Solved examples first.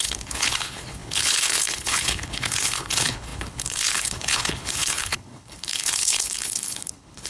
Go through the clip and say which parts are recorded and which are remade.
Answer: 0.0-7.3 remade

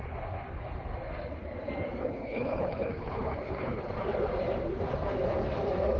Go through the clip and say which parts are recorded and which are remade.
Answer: 0.0-2.0 recorded; 2.0-3.8 remade; 3.8-6.0 recorded

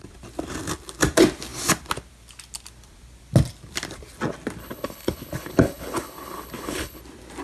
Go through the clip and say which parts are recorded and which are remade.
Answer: 0.0-4.6 recorded; 4.6-7.0 remade; 7.0-7.4 recorded

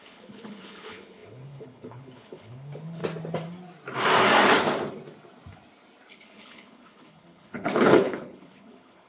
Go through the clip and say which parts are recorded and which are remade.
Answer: 0.0-3.0 remade; 3.0-6.1 recorded; 6.1-9.1 remade

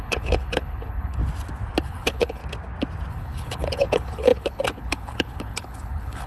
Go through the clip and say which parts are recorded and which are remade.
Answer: 0.0-1.2 remade; 1.2-1.8 recorded; 1.8-2.4 remade; 2.4-3.1 recorded; 3.1-6.3 remade

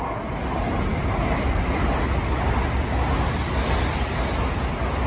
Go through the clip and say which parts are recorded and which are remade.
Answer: 0.0-5.1 recorded

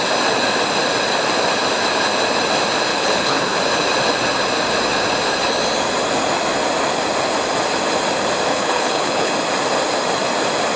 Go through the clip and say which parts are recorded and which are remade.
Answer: 0.0-2.9 recorded; 2.9-3.6 remade; 3.6-8.5 recorded; 8.5-9.3 remade; 9.3-10.8 recorded

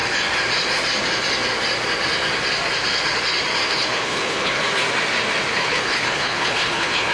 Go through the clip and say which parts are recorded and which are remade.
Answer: 0.0-3.6 recorded; 3.6-4.6 remade; 4.6-5.5 recorded; 5.5-7.1 remade